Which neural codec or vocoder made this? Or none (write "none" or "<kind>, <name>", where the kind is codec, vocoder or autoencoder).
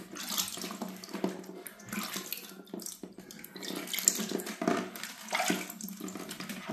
none